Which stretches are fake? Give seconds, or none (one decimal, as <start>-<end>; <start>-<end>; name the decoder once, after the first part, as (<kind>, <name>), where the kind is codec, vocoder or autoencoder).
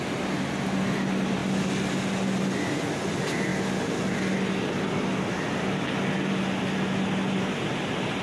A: none